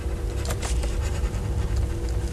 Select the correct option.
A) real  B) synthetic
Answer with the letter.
A